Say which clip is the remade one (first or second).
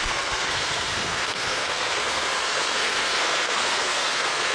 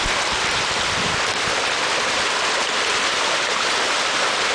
first